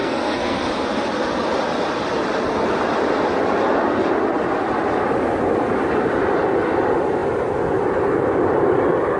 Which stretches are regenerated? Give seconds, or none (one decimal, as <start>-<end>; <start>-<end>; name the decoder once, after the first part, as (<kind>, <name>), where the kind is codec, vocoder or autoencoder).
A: 0.0-0.6 (codec, SNAC)